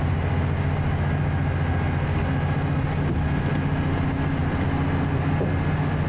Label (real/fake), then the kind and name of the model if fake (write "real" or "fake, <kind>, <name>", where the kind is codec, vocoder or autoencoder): real